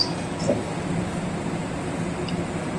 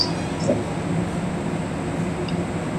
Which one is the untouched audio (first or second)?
second